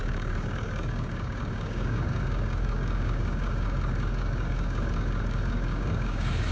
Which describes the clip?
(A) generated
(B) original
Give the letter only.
A